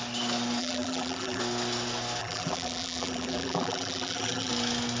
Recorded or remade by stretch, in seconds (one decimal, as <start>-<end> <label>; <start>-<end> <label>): 0.0-0.6 recorded; 0.6-1.4 remade; 1.4-2.2 recorded; 2.2-4.5 remade; 4.5-5.0 recorded